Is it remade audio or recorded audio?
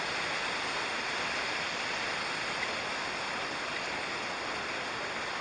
recorded